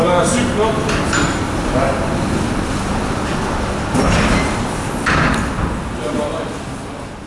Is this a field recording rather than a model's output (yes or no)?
yes